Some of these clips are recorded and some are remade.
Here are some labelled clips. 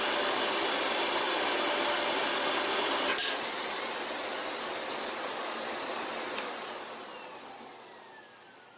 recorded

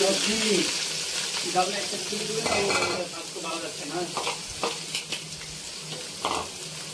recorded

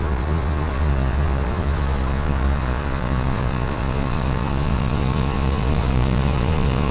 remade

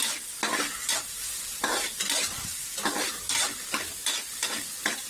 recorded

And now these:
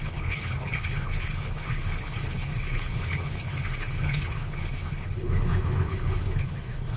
remade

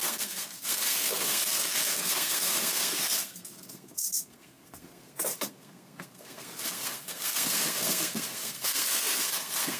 remade